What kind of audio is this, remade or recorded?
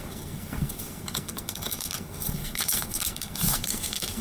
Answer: remade